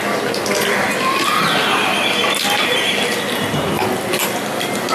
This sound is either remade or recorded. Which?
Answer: recorded